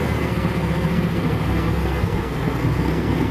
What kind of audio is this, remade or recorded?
remade